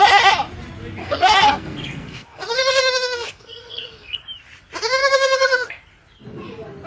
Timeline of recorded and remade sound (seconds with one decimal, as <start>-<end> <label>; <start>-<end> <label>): 0.0-1.0 recorded; 1.0-4.2 remade; 4.2-5.0 recorded; 5.0-5.8 remade; 5.8-6.9 recorded